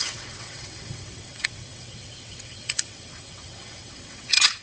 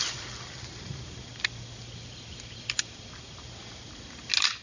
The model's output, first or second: first